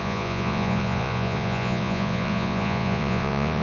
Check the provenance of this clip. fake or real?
fake